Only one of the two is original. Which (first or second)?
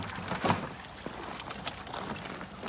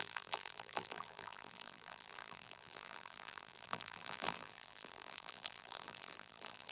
first